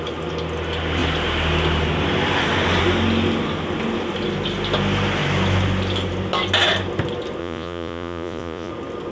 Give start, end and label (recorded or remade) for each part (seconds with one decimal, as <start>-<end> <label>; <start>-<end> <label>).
0.0-7.4 recorded; 7.4-8.7 remade; 8.7-9.1 recorded